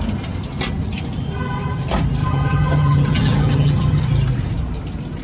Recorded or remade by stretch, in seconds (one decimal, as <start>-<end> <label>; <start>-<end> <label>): 0.0-2.2 recorded; 2.2-4.0 remade; 4.0-5.2 recorded